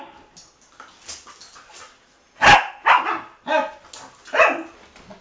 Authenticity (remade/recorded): recorded